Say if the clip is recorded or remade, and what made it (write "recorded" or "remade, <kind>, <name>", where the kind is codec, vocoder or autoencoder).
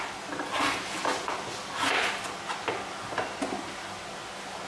recorded